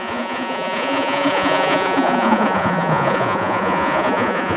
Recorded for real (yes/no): no